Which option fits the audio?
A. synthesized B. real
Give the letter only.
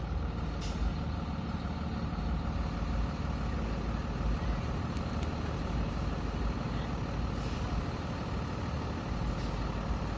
B